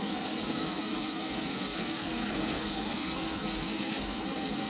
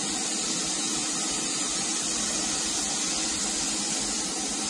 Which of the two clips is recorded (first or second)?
second